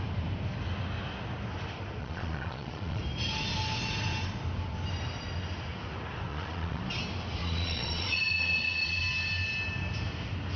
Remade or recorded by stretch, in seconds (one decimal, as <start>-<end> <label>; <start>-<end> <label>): 0.0-2.0 recorded; 2.0-3.0 remade; 3.0-6.3 recorded; 6.3-6.8 remade; 6.8-7.4 recorded; 7.4-9.0 remade; 9.0-10.6 recorded